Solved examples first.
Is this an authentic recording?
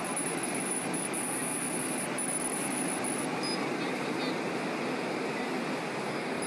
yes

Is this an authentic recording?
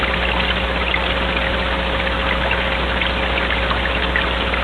yes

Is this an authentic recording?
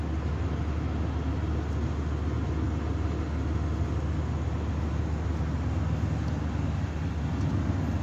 yes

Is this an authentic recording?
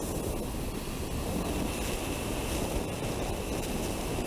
yes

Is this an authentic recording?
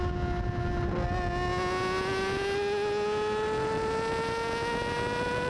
yes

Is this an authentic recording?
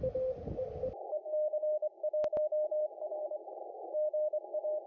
yes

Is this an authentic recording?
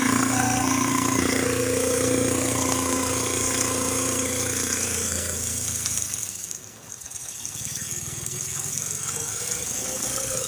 no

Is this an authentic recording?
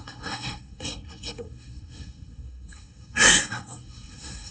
no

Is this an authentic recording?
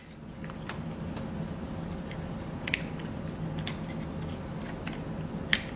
yes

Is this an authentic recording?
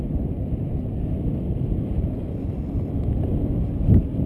yes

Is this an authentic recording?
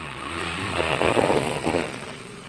no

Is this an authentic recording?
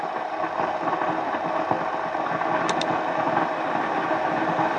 yes